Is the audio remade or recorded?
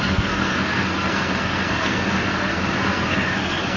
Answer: remade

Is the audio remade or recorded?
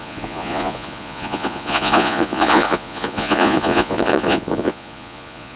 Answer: remade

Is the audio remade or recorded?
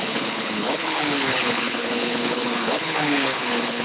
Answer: remade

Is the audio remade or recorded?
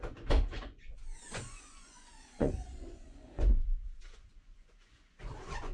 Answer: remade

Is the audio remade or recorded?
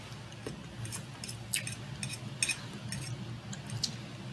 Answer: recorded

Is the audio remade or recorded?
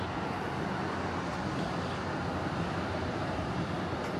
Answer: recorded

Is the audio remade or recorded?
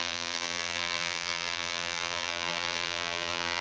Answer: remade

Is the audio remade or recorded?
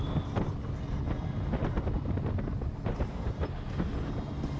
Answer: recorded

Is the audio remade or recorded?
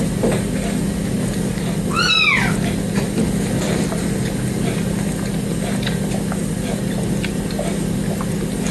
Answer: recorded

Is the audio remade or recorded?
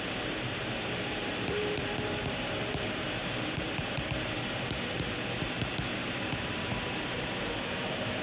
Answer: remade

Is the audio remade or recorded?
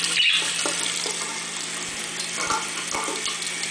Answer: recorded